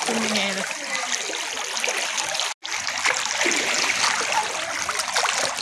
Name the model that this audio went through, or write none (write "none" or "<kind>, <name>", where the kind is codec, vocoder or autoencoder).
none